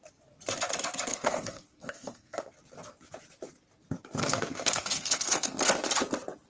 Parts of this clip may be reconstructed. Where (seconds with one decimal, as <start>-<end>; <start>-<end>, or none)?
1.1-2.5; 4.2-5.6